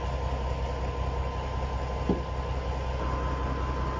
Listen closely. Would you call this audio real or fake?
real